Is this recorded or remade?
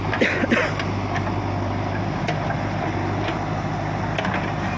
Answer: recorded